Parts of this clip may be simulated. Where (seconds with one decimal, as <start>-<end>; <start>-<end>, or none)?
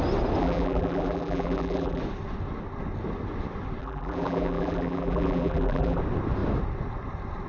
0.4-2.0; 3.8-6.0